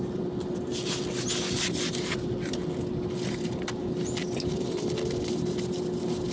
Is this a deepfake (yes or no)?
no